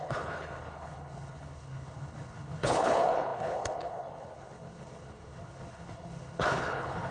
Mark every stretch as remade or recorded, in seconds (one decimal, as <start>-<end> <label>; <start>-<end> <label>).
0.0-7.1 remade